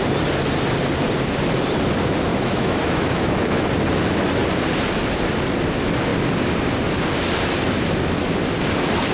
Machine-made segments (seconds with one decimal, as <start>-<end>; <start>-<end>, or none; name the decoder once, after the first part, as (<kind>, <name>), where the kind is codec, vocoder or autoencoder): 2.3-3.6 (autoencoder, DAC-VAE)